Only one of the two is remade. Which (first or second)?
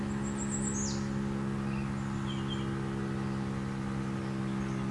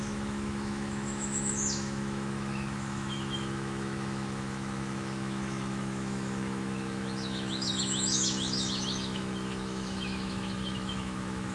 second